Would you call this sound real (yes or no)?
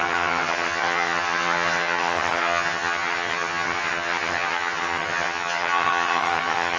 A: no